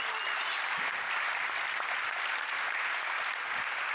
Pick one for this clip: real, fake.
real